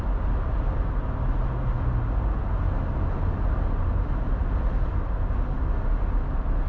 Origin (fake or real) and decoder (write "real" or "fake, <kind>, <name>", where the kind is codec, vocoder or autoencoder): real